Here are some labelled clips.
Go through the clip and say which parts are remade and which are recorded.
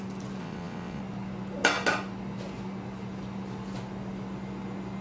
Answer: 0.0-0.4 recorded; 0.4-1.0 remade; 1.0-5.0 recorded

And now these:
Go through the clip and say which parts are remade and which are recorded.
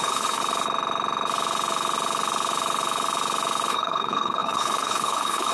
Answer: 0.0-0.4 remade; 0.4-3.7 recorded; 3.7-5.5 remade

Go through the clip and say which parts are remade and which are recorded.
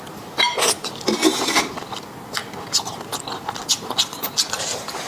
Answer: 0.0-5.1 recorded